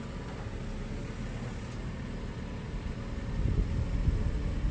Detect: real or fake real